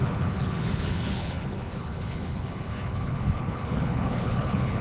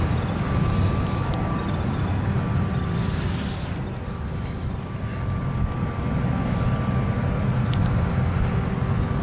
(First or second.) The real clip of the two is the second